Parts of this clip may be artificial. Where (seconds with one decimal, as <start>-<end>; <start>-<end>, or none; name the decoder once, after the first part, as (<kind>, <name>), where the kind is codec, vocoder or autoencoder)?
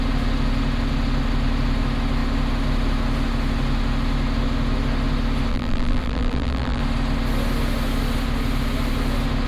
5.5-6.8 (vocoder, BigVGAN v2)